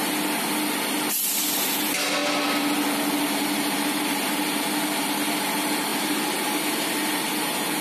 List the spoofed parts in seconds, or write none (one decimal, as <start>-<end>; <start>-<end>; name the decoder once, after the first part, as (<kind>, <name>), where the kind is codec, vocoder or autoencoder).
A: none